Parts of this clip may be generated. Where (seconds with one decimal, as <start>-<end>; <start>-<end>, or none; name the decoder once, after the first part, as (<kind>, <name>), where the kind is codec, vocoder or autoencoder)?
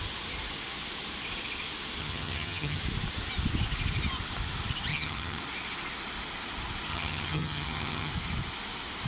2.0-2.8 (vocoder, HiFi-GAN); 4.9-5.4; 6.9-8.1